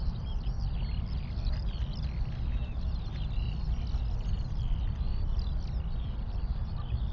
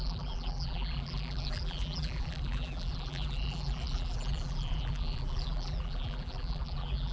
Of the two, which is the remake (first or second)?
second